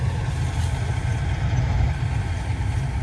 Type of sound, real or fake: real